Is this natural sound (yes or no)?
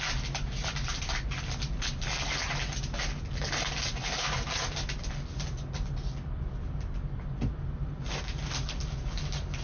yes